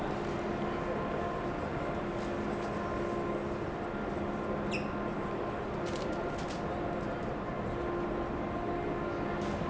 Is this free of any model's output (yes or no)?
yes